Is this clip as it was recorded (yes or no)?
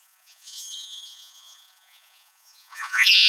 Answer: no